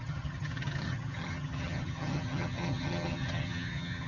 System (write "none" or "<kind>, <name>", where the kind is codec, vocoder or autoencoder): vocoder, HiFi-GAN